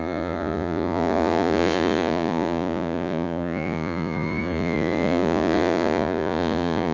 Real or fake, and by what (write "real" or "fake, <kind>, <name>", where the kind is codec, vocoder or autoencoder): fake, vocoder, Vocos